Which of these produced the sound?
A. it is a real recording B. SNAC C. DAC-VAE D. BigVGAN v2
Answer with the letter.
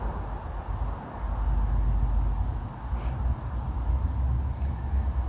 A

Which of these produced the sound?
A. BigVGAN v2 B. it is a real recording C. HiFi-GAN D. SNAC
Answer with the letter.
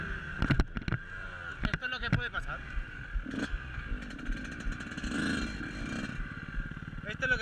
B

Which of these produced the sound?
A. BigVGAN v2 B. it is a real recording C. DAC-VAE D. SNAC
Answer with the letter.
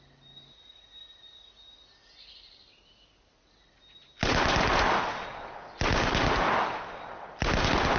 B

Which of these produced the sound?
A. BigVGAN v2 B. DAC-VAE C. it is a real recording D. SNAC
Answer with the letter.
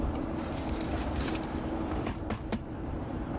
A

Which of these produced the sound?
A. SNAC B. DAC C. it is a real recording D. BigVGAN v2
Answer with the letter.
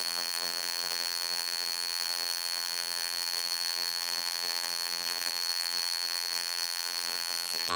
D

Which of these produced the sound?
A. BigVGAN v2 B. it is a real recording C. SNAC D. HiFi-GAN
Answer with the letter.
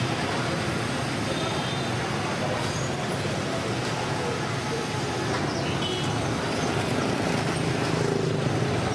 B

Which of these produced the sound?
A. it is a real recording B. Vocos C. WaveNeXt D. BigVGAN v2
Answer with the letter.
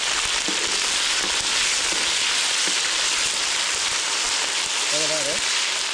A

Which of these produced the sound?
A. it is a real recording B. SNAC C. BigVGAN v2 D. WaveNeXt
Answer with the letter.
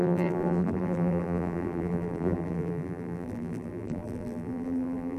C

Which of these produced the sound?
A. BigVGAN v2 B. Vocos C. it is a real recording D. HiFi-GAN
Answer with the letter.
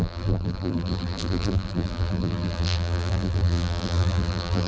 A